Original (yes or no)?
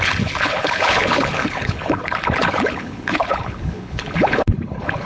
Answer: no